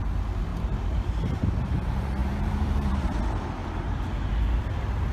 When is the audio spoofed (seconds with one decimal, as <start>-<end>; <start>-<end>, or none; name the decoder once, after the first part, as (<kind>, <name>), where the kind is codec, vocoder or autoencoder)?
0.5-1.4 (vocoder, BigVGAN v2); 2.2-3.2; 3.6-4.6